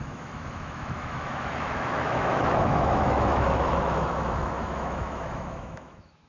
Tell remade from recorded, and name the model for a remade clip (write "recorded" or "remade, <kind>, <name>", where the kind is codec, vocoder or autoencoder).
remade, autoencoder, DAC-VAE